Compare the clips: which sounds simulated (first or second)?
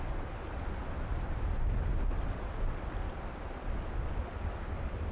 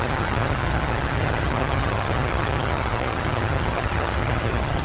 second